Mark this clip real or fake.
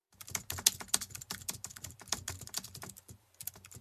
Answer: real